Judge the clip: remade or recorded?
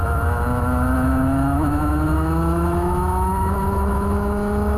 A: remade